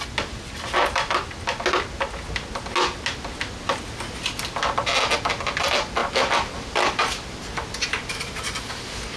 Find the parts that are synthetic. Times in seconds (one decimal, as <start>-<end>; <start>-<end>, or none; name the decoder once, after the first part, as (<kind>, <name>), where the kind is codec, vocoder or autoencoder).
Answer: none